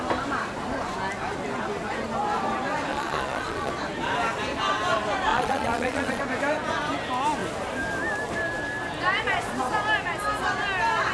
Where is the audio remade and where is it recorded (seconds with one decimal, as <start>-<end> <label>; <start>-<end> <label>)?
0.0-2.9 recorded; 2.9-3.7 remade; 3.7-5.3 recorded; 5.3-6.2 remade; 6.2-11.1 recorded